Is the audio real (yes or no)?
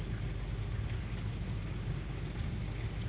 yes